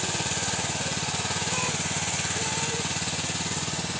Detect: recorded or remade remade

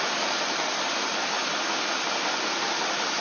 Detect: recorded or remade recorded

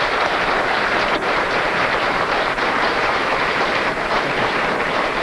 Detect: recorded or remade remade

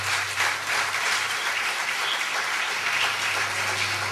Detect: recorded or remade recorded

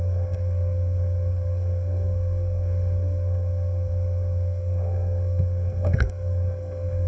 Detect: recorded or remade remade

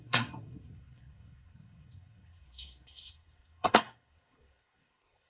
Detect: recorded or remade remade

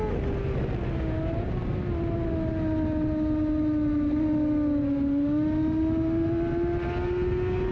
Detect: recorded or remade recorded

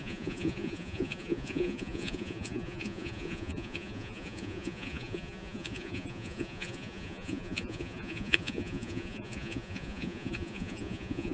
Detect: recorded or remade remade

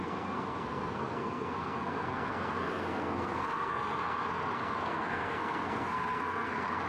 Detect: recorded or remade remade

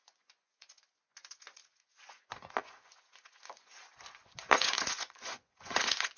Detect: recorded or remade remade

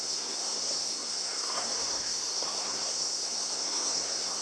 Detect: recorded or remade remade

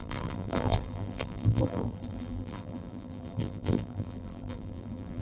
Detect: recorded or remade remade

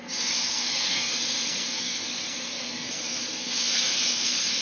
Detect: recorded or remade remade